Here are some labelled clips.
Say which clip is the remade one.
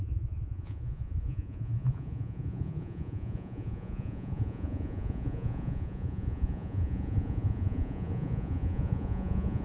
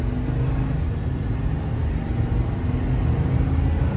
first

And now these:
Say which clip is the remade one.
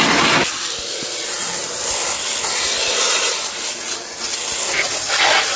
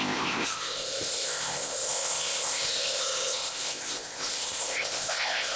second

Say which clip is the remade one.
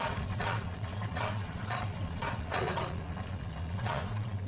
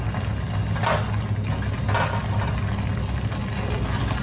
first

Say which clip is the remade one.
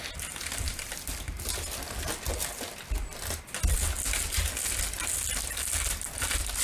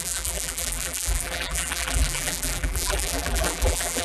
second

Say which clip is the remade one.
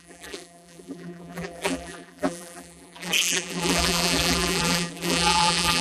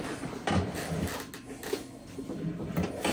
first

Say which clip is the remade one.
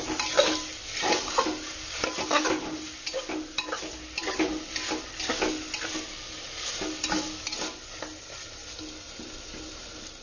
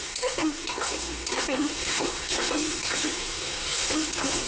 second